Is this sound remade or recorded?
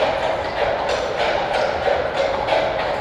recorded